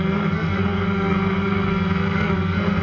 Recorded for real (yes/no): no